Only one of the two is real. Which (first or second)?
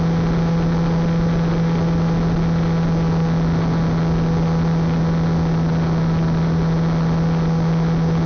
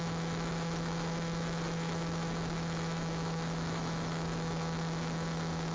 first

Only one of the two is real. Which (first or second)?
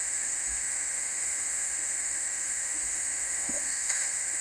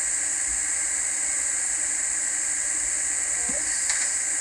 second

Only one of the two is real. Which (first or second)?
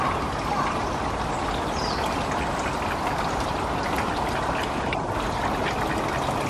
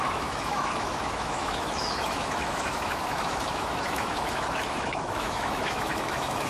first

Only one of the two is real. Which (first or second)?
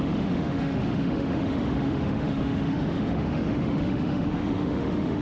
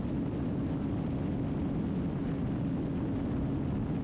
second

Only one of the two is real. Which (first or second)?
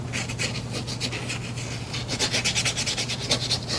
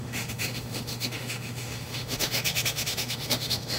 first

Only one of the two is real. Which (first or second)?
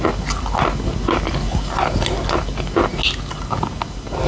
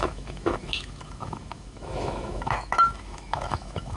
first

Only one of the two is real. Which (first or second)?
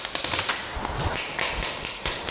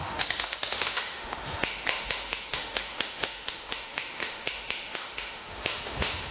first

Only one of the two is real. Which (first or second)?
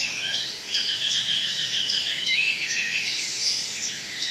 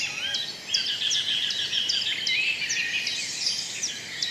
second